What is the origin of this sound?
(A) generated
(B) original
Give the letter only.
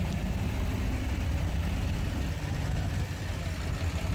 B